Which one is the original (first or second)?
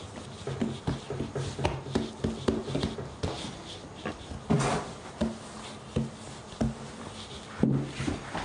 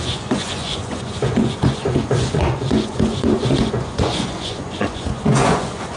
first